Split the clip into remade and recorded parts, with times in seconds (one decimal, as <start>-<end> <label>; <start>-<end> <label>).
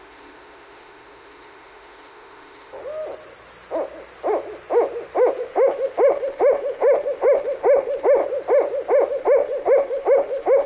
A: 0.0-2.8 remade; 2.8-5.4 recorded; 5.4-8.2 remade; 8.2-9.1 recorded; 9.1-10.7 remade